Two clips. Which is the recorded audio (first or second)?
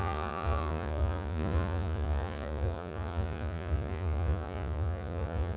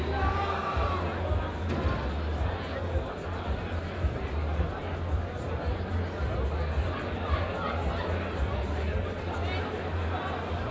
second